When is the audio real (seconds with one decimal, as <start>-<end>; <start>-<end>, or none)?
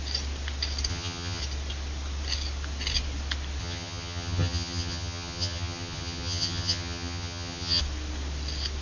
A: 0.0-0.9; 1.4-3.6; 7.8-8.8